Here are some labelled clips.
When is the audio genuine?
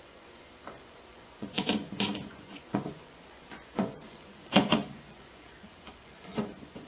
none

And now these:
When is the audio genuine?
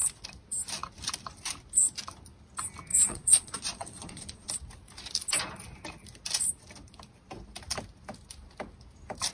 0.0-2.9; 4.5-9.3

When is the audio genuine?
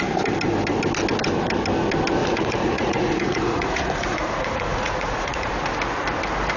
0.0-2.2; 5.5-6.6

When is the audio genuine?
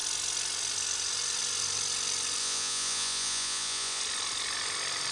0.0-2.4; 4.0-5.1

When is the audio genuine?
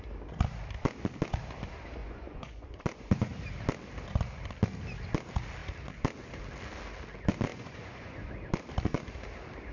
0.0-2.0; 3.3-7.5; 8.3-9.7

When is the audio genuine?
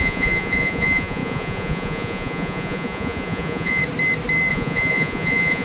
3.8-4.5